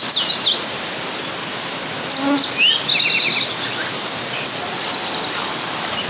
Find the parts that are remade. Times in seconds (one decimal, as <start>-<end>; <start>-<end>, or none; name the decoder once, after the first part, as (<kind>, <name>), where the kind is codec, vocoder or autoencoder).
none